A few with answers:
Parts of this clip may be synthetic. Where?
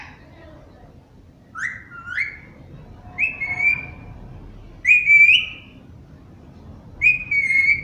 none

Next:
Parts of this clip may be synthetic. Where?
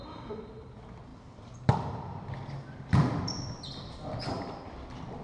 1.1-4.2 (vocoder, BigVGAN v2)